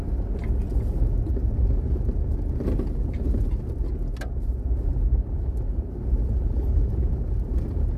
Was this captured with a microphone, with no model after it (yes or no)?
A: yes